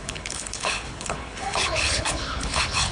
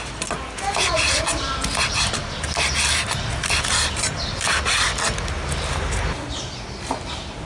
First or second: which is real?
second